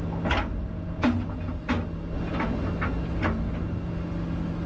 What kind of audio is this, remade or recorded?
recorded